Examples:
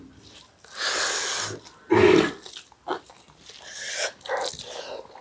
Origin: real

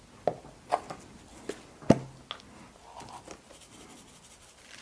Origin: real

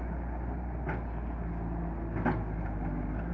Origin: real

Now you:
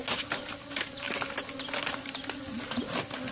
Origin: real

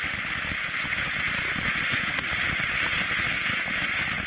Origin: real